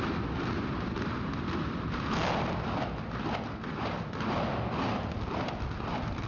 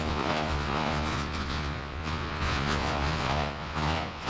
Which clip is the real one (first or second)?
first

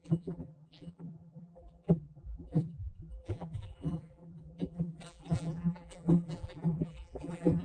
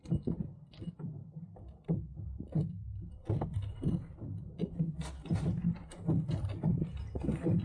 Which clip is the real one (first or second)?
second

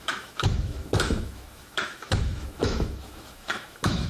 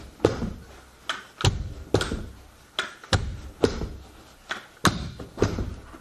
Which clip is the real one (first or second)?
second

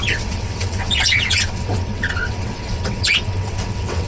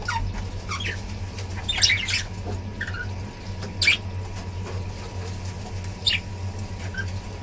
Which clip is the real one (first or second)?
second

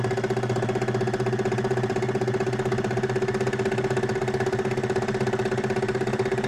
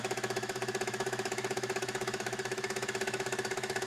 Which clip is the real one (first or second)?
first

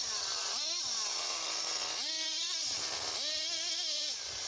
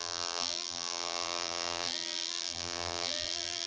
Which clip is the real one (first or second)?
first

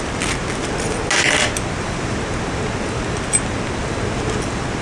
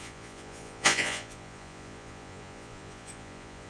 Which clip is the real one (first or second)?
first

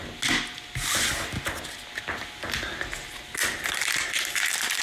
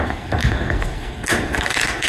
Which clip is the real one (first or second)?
first